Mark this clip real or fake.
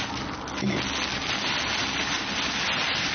real